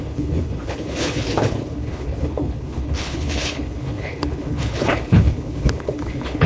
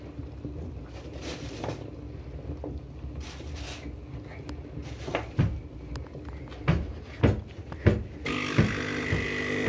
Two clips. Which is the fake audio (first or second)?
first